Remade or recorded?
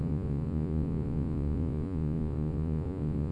remade